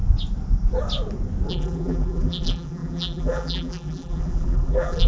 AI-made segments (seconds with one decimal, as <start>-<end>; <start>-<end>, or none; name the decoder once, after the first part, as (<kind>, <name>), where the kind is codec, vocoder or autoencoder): 1.5-5.1 (vocoder, BigVGAN v2)